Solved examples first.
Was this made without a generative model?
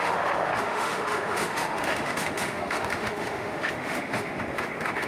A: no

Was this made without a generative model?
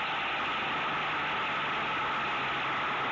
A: yes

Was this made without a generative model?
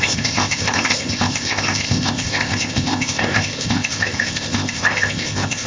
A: no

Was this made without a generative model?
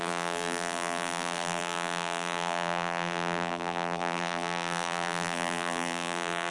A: no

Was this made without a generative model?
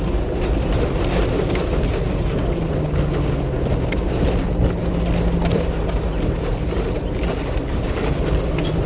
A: yes